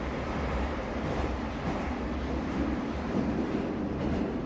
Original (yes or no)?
yes